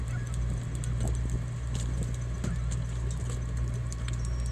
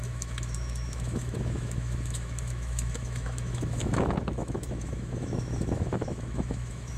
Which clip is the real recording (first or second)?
first